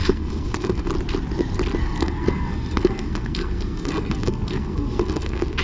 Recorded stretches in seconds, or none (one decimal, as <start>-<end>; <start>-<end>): 0.9-1.8